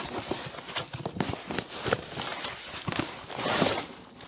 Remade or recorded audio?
recorded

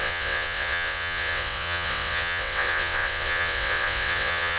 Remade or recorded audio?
remade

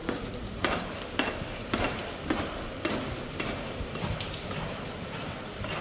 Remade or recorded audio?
recorded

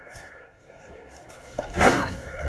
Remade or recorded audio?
remade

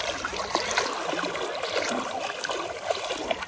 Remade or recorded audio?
recorded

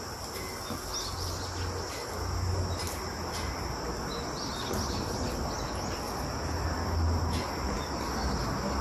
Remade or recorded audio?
recorded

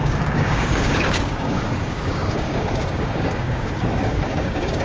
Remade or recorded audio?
remade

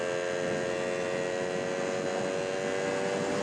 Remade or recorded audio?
recorded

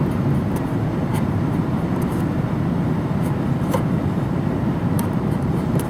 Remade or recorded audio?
remade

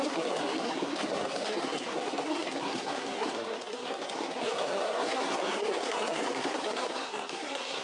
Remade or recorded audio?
remade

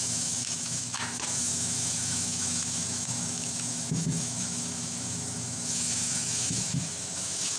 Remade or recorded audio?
remade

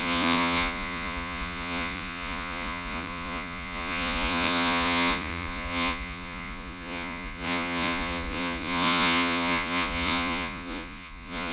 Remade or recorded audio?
remade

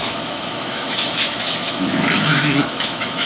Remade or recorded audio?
remade